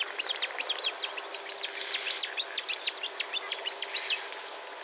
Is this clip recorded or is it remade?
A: recorded